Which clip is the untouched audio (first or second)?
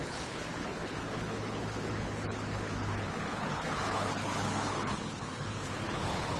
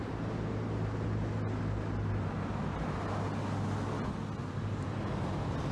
second